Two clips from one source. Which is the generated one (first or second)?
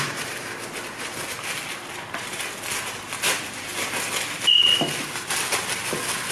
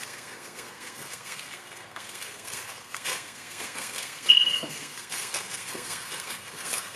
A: second